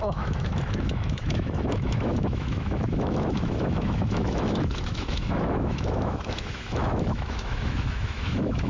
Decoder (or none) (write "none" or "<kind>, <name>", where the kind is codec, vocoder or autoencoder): autoencoder, DAC-VAE